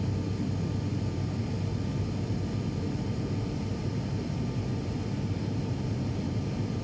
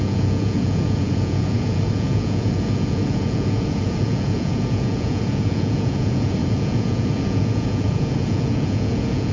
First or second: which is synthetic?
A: second